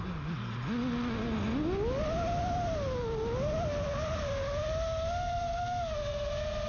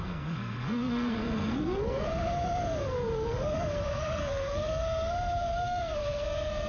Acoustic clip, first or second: first